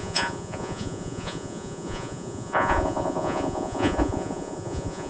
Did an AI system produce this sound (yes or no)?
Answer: yes